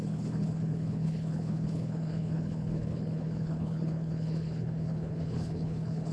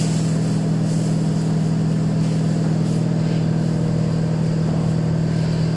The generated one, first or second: first